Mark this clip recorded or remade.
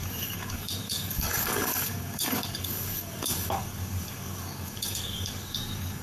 remade